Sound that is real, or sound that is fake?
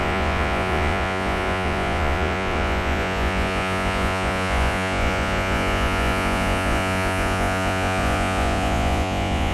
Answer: fake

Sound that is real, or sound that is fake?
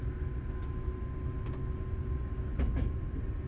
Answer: real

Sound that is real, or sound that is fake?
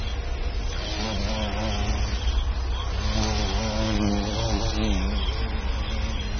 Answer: real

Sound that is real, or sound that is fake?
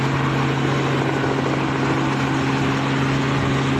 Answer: real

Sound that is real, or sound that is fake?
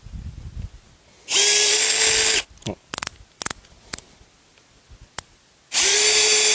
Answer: real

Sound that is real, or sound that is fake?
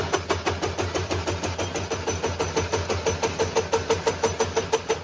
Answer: real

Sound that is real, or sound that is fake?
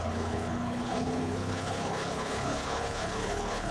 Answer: fake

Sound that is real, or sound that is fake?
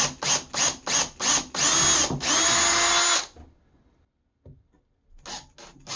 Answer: real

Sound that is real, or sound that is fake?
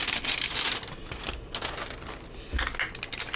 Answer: real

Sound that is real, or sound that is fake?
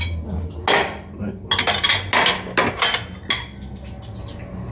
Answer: real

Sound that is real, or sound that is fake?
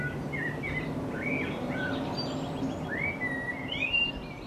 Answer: real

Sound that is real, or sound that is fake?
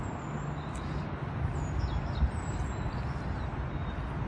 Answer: real